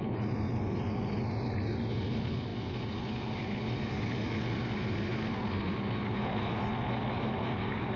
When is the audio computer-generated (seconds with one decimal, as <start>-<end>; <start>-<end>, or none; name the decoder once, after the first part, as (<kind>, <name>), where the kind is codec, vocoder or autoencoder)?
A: none